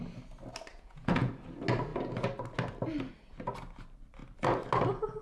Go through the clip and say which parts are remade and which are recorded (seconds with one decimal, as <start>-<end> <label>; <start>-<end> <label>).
0.0-0.7 recorded; 0.7-1.3 remade; 1.3-5.2 recorded